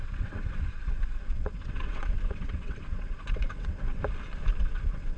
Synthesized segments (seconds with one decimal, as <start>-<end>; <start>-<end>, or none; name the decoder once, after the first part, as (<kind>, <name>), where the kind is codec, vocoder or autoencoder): 0.0-4.0 (vocoder, WaveNeXt); 4.6-5.2